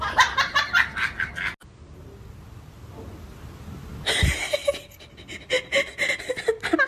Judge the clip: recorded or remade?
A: recorded